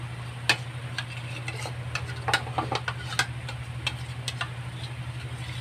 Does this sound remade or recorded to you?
recorded